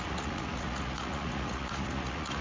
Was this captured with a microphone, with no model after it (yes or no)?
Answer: no